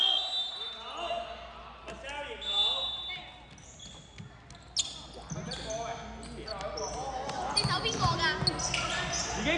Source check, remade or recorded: recorded